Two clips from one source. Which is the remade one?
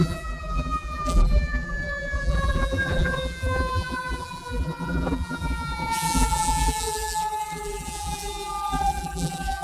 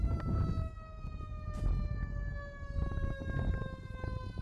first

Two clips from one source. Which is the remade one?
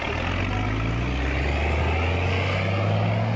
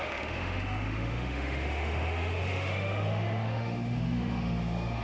second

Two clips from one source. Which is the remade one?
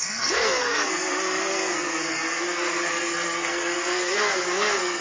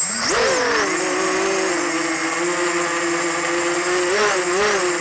first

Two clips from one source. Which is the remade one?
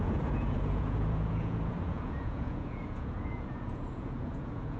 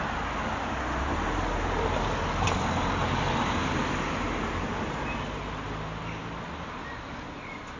first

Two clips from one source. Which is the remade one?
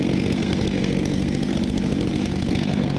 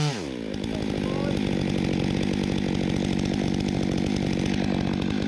first